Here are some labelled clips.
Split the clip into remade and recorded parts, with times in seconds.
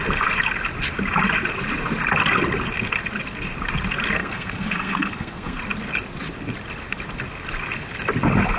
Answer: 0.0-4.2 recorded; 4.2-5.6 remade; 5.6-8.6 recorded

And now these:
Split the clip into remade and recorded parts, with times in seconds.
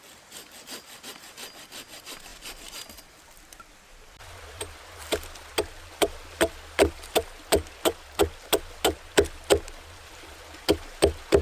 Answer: 0.0-11.4 recorded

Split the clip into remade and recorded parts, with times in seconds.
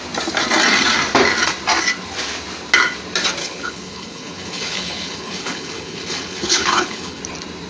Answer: 0.0-3.4 recorded; 3.4-7.2 remade; 7.2-7.7 recorded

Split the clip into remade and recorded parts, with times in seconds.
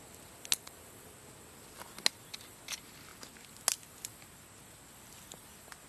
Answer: 0.0-5.9 recorded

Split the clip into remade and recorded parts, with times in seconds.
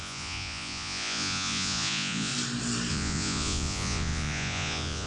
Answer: 0.0-2.3 remade; 2.3-2.9 recorded; 2.9-5.1 remade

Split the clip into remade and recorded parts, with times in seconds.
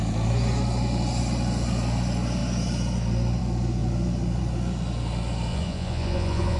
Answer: 0.0-5.5 recorded; 5.5-6.6 remade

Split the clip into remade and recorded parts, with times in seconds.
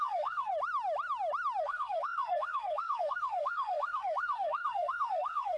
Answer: 0.0-0.5 remade; 0.5-1.6 recorded; 1.6-5.6 remade